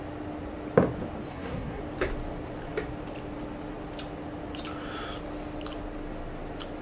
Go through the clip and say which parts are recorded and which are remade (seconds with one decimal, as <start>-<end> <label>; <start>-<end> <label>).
0.0-1.3 recorded; 1.3-1.8 remade; 1.8-6.8 recorded